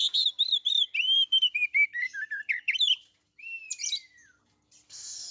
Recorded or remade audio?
remade